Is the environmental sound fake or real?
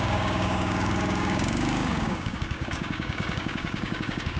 fake